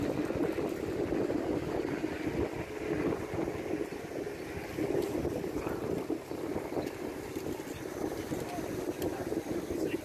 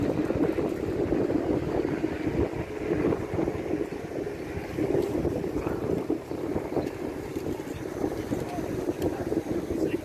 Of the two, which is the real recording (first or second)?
first